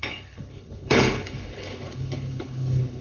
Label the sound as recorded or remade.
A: remade